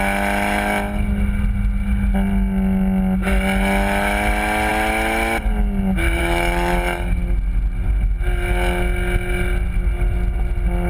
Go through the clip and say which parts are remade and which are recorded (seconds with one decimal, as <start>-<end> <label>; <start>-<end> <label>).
0.0-10.9 recorded